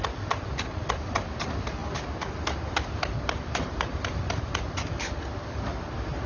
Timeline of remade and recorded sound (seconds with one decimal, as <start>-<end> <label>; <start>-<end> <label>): 0.0-6.3 recorded